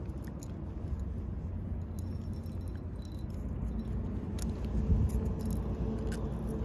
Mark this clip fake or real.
real